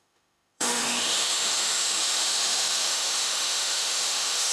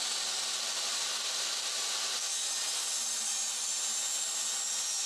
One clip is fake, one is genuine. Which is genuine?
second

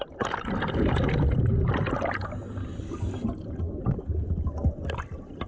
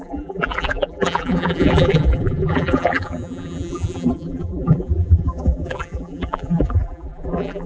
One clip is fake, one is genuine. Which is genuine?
first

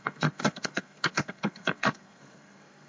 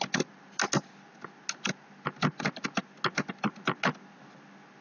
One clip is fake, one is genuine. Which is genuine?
second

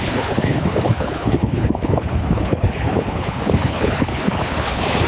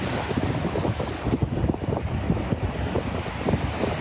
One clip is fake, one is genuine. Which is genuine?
second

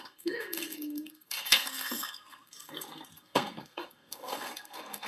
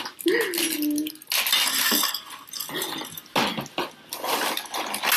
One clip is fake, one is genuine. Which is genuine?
second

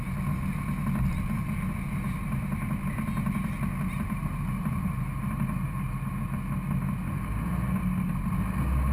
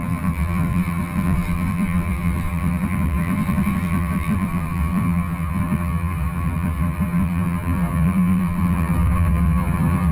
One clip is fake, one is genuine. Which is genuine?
first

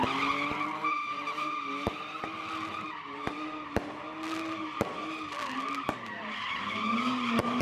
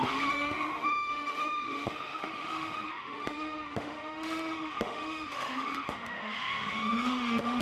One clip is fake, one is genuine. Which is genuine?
first